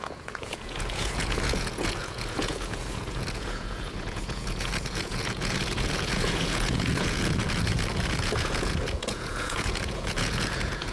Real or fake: fake